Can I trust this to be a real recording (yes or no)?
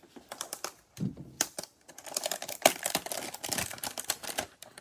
no